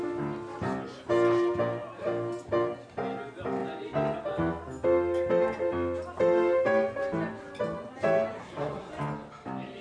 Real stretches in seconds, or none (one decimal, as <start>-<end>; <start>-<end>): 0.0-8.4; 8.9-9.8